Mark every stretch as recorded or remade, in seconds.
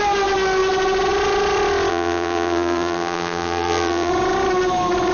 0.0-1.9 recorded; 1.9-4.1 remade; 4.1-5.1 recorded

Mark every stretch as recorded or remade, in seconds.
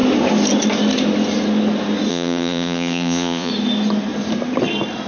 0.0-2.1 recorded; 2.1-3.5 remade; 3.5-5.1 recorded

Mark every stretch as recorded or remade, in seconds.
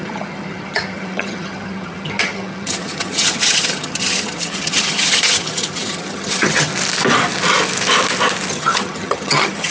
0.0-6.7 remade; 6.7-8.5 recorded; 8.5-9.7 remade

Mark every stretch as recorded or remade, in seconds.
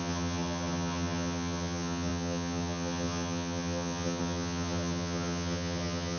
0.0-6.2 remade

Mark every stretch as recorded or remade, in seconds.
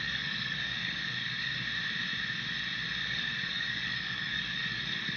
0.0-1.5 remade; 1.5-3.1 recorded; 3.1-5.2 remade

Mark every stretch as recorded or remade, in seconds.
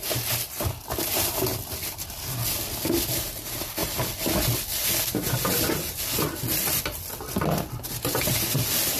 0.0-9.0 recorded